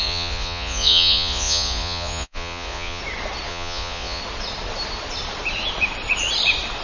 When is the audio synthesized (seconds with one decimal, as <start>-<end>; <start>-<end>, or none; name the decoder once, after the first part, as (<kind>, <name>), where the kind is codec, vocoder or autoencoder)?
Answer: 0.0-3.0 (vocoder, Vocos); 3.5-4.2

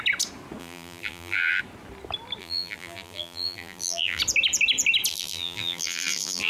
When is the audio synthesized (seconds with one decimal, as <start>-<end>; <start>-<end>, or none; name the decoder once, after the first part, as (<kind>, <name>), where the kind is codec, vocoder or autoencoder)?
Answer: 0.6-1.6 (vocoder, BigVGAN v2); 2.4-4.2; 5.1-6.5

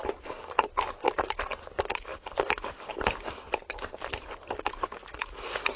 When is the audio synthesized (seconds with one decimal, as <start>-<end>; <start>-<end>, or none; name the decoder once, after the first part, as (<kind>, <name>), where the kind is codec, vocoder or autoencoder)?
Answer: 5.0-5.8 (vocoder, Vocos)

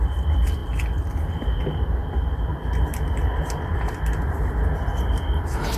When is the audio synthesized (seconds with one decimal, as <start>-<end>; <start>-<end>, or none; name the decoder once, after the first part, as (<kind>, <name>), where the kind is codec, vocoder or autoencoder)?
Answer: none

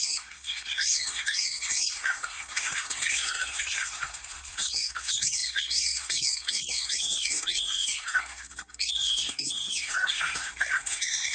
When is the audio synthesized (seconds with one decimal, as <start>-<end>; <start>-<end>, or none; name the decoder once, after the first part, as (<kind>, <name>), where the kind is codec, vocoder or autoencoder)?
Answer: 0.0-11.3 (codec, SNAC)

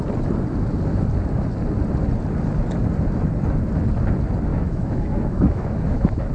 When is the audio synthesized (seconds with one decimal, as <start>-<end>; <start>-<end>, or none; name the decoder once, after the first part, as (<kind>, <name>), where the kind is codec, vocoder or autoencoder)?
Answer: 4.5-6.3 (autoencoder, DAC-VAE)